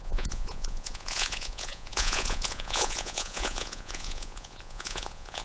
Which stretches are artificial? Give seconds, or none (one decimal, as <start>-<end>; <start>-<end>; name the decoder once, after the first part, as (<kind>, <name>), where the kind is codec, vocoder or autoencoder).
0.0-5.4 (vocoder, Vocos)